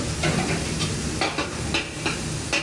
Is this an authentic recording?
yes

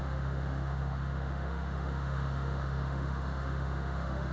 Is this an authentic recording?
no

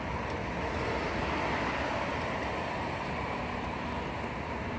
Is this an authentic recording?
yes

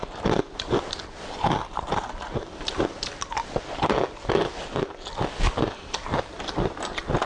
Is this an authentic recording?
yes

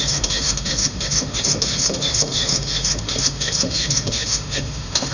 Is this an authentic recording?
no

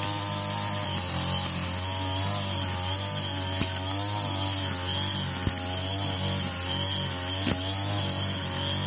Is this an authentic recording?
yes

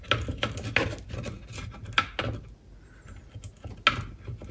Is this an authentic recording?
yes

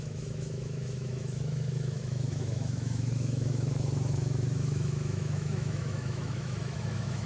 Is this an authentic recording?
no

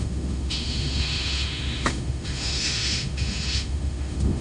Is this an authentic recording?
no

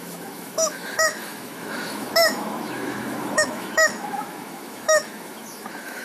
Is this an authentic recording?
no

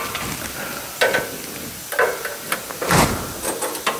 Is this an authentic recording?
yes